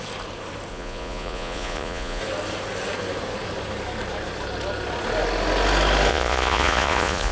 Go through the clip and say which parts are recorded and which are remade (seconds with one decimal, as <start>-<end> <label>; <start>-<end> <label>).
0.0-0.7 recorded; 0.7-2.2 remade; 2.2-6.1 recorded; 6.1-7.3 remade